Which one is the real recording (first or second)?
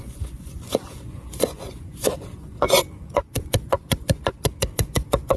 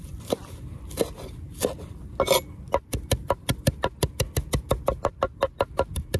second